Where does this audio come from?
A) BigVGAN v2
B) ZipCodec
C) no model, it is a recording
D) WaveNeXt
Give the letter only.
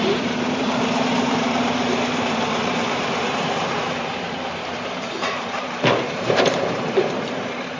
A